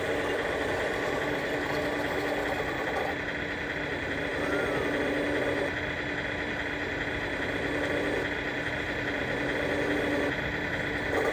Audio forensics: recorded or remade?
recorded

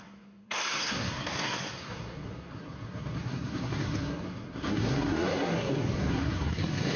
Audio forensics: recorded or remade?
remade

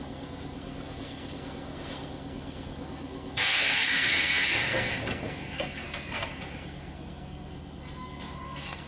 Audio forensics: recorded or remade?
remade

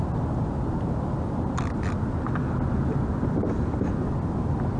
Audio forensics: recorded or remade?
recorded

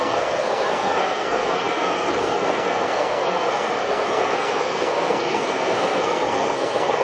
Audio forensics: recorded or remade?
remade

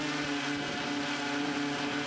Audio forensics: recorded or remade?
recorded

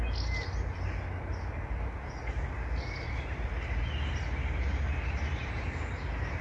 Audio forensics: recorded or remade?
recorded